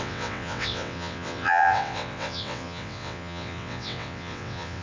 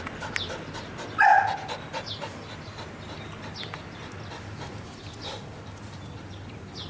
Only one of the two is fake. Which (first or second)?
first